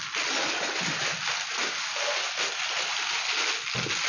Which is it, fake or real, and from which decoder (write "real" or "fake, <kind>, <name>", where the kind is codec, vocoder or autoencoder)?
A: real